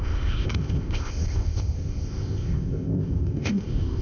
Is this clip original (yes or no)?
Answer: no